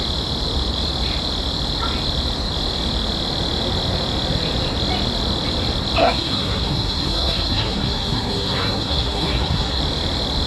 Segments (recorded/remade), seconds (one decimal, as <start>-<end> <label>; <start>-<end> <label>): 0.0-6.0 recorded; 6.0-9.8 remade; 9.8-10.5 recorded